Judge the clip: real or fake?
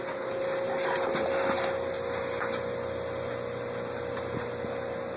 real